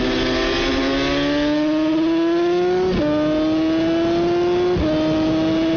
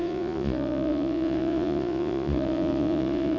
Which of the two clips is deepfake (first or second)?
second